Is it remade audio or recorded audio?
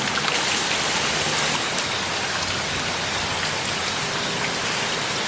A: recorded